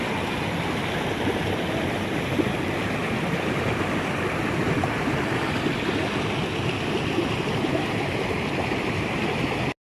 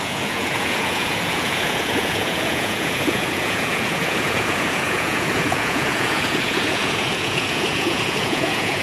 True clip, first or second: first